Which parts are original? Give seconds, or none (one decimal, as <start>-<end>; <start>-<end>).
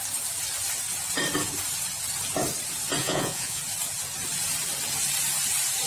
0.0-3.0; 3.6-5.9